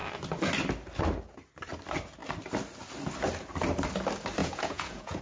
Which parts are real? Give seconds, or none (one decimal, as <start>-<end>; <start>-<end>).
0.0-4.4

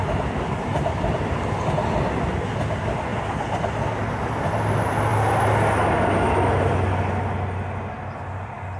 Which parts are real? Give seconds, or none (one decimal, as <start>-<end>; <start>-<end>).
0.0-8.8

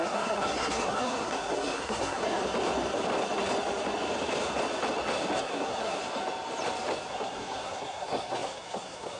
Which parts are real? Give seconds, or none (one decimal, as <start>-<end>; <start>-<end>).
2.4-5.4; 6.0-7.1

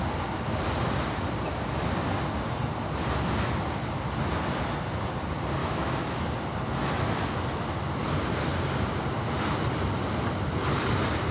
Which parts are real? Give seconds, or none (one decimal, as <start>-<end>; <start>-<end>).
0.0-5.6; 6.2-11.3